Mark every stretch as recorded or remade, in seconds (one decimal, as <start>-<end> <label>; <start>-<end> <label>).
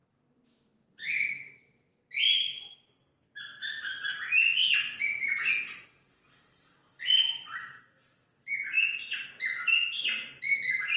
0.0-11.0 recorded